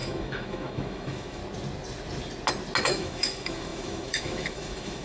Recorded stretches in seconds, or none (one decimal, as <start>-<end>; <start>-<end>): 1.4-2.8

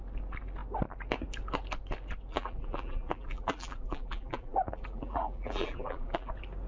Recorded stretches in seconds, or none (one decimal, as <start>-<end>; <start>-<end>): 0.0-2.3; 6.3-6.7

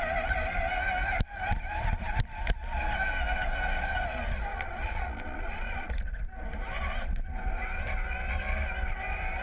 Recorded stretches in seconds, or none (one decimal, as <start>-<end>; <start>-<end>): 0.0-4.5; 5.9-9.4

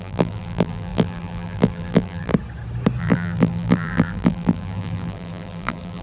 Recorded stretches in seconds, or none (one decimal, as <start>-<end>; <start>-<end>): 2.3-3.0

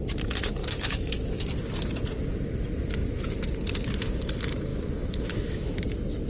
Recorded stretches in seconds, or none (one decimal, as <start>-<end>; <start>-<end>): 0.0-0.6; 1.2-4.7; 5.8-6.3

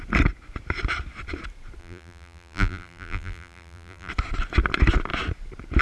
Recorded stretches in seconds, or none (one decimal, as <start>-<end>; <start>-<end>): 0.0-1.8; 4.1-5.8

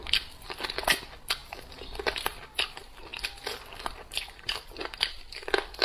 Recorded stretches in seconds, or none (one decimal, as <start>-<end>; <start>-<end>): 0.0-5.8